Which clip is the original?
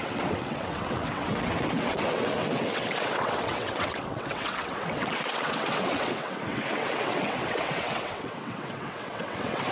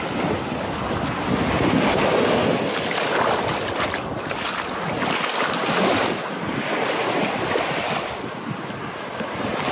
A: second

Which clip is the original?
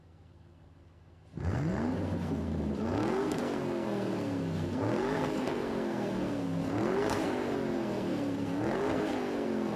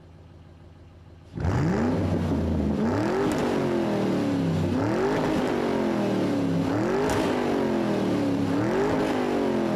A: second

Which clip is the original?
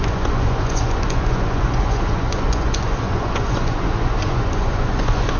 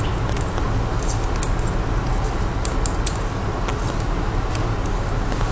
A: second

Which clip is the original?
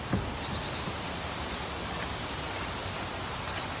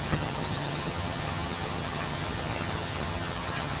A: first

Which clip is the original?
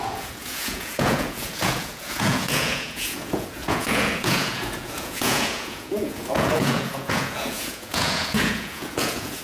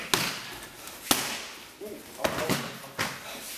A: second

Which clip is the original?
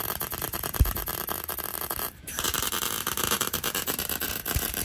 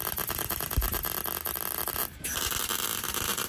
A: second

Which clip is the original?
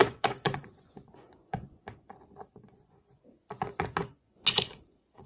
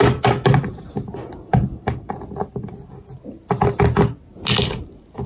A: second